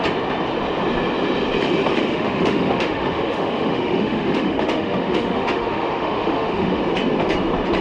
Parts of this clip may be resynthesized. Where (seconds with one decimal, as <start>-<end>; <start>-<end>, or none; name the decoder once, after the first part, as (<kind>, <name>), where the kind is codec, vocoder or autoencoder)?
2.1-6.8 (autoencoder, DAC-VAE)